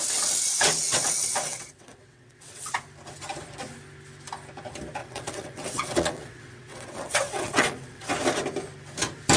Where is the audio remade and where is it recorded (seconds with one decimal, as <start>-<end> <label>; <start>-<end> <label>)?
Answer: 0.0-1.4 recorded; 1.4-2.8 remade; 2.8-5.0 recorded; 5.0-8.1 remade; 8.1-9.4 recorded